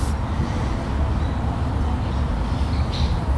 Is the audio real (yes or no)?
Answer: yes